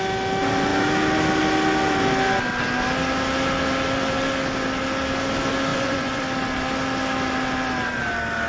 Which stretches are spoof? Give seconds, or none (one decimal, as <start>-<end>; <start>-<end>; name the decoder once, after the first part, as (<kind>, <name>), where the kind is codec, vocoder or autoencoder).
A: 5.7-6.2 (vocoder, Vocos)